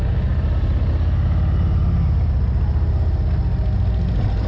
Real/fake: real